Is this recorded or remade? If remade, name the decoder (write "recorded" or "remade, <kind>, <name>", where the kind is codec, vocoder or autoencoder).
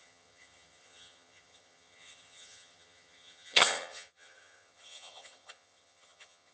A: remade, vocoder, HiFi-GAN